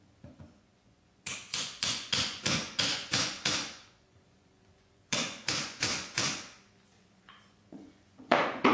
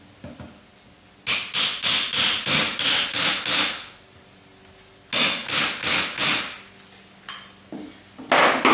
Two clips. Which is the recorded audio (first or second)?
second